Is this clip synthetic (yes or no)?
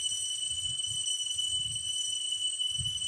no